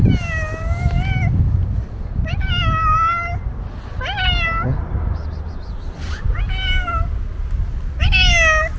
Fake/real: real